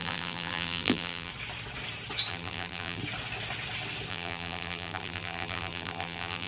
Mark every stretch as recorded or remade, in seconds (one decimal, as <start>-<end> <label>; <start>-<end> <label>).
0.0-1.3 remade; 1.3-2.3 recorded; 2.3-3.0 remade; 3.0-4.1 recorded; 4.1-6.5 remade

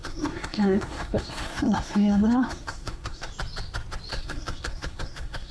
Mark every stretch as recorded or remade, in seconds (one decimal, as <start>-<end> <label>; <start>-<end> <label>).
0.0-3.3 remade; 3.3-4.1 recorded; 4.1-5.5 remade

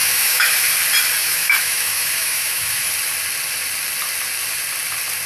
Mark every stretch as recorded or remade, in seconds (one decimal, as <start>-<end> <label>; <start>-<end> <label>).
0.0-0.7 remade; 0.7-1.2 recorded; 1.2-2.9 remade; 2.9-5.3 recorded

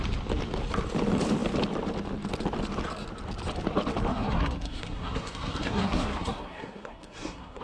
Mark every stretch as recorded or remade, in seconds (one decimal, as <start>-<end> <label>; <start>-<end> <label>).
0.0-4.1 recorded; 4.1-7.6 remade

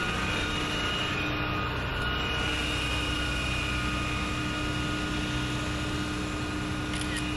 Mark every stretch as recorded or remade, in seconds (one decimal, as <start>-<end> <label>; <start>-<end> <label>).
0.0-7.4 recorded